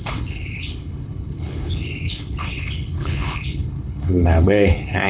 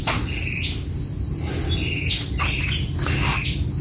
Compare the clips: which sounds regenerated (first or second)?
first